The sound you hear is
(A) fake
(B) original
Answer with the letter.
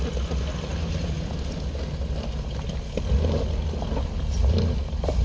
B